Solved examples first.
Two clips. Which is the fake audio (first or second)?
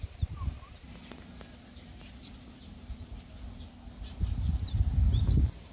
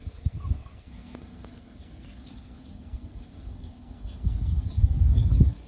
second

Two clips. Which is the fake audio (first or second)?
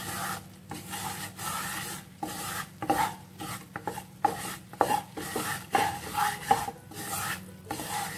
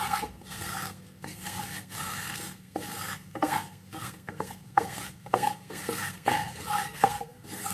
second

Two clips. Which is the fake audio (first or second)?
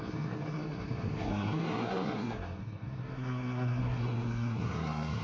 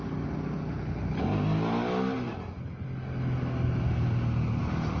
first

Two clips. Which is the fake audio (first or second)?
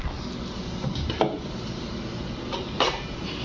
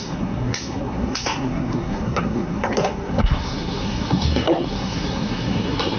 second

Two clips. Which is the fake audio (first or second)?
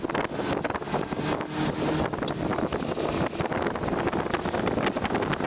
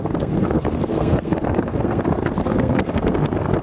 second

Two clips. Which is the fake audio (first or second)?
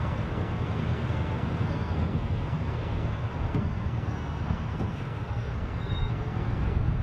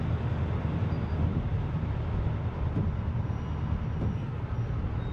first